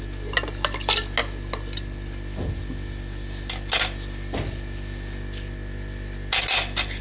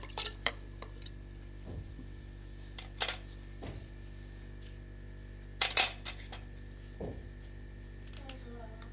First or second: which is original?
first